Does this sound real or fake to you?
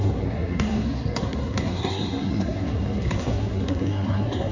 fake